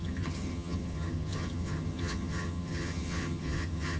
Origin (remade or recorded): remade